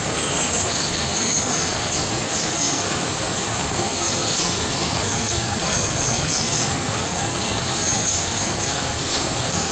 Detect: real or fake fake